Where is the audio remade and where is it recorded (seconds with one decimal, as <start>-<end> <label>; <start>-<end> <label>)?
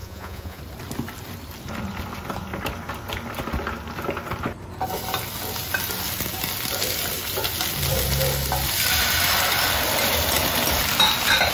0.0-0.6 remade; 0.6-11.5 recorded